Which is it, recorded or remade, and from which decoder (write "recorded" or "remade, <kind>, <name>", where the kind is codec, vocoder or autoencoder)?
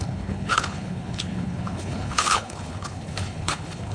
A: remade, codec, HILCodec